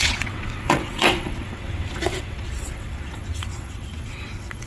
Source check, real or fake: fake